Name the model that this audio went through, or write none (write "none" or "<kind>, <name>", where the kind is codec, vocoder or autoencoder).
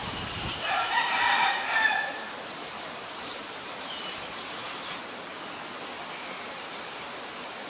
vocoder, BigVGAN v2